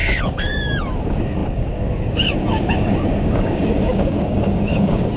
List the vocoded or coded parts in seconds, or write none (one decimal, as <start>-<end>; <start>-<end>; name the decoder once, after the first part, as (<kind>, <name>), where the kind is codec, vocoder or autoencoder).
0.0-5.2 (codec, DAC)